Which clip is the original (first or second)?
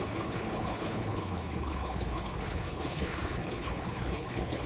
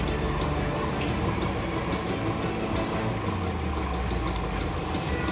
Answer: second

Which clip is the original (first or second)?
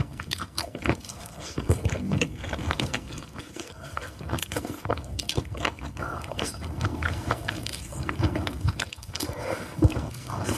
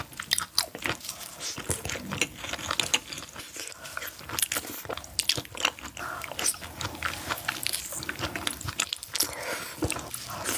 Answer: second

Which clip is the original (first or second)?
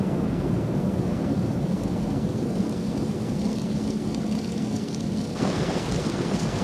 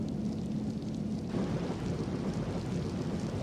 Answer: second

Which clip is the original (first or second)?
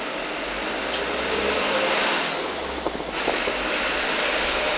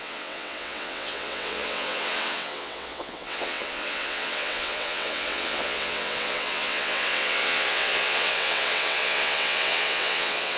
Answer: first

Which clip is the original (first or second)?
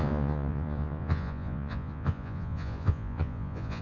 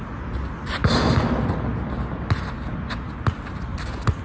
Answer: second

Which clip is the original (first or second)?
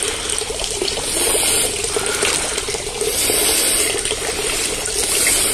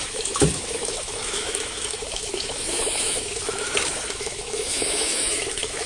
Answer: first